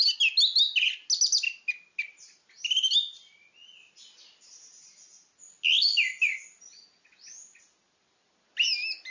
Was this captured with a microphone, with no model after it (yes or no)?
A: yes